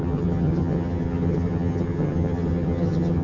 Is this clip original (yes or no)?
no